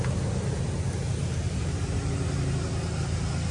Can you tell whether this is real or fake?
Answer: real